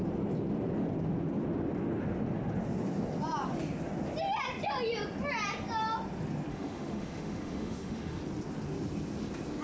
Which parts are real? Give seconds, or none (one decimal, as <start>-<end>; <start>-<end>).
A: 0.0-6.5; 8.2-9.6